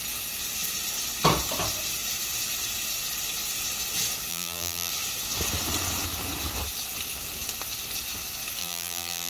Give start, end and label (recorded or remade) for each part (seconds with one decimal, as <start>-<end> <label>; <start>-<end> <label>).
0.0-4.3 recorded; 4.3-4.9 remade; 4.9-8.6 recorded; 8.6-9.3 remade